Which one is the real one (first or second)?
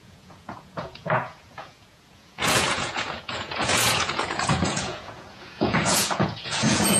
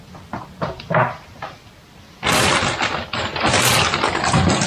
second